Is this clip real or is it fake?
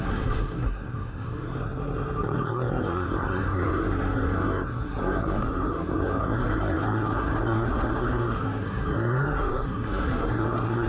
fake